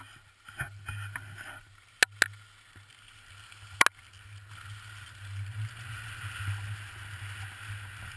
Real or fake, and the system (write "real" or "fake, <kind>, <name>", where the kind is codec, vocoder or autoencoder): real